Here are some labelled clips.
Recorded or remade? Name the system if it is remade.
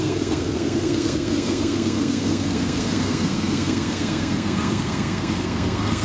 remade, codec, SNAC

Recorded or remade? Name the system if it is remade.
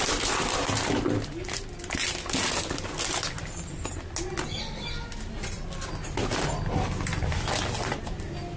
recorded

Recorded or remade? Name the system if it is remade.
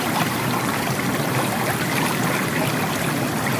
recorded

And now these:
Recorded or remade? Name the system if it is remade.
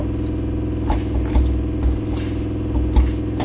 recorded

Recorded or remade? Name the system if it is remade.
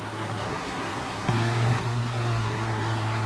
remade, codec, SNAC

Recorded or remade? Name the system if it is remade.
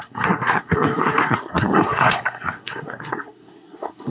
remade, codec, SNAC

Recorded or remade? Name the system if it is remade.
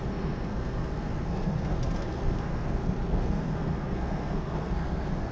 remade, codec, SNAC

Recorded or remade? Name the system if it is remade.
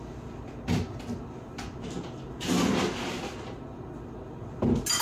recorded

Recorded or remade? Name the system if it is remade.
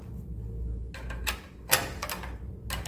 recorded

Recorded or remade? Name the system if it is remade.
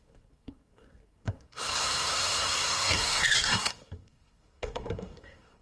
remade, codec, SNAC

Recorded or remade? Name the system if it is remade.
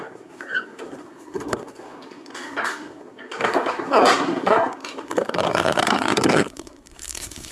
remade, codec, SNAC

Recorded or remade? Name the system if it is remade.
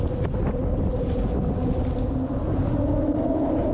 recorded